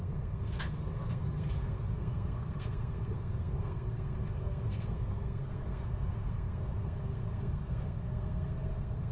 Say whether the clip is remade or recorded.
remade